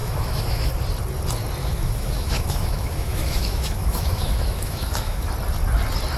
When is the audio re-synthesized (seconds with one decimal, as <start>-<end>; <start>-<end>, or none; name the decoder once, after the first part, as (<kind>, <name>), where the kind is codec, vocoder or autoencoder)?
0.0-0.7 (autoencoder, DAC-VAE); 1.6-5.3

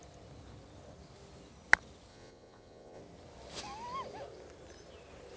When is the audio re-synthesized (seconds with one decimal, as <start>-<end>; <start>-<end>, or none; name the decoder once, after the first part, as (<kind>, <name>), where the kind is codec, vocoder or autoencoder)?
2.1-3.0 (vocoder, Vocos)

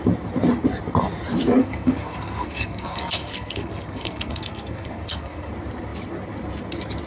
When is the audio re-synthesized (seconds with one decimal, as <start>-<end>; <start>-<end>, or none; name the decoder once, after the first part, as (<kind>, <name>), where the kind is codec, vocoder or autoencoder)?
1.6-5.5 (codec, SNAC)

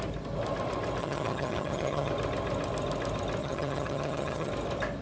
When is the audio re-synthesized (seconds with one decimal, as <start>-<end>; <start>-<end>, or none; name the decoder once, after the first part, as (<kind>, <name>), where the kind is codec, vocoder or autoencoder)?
1.0-2.1 (vocoder, HiFi-GAN); 3.4-4.5

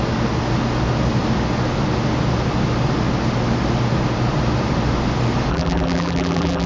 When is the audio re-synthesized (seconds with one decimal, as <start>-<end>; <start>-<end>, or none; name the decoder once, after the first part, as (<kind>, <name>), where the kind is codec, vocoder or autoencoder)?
5.5-6.7 (vocoder, BigVGAN v2)

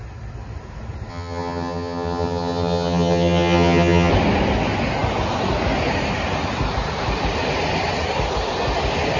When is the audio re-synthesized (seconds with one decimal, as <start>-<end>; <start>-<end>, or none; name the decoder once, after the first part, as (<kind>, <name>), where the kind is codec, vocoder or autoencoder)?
1.1-4.1 (vocoder, HiFi-GAN)

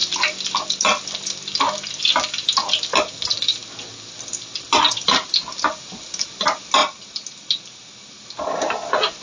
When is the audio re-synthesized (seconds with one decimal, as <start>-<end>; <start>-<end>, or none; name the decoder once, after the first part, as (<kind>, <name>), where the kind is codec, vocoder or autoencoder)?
none

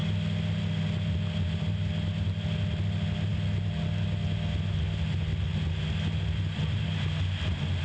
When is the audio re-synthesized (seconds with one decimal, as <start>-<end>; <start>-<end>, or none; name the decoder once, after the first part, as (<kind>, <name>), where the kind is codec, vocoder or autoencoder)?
none